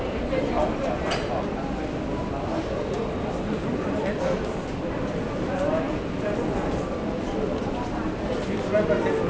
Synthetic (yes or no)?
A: no